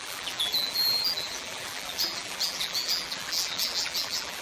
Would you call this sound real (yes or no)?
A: no